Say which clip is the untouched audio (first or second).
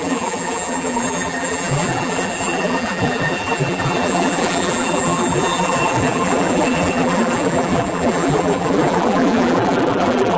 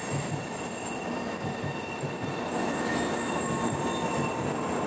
second